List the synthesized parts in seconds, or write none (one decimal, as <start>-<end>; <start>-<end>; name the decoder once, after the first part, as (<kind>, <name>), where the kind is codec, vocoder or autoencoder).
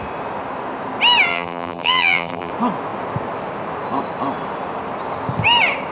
1.3-2.5 (vocoder, BigVGAN v2)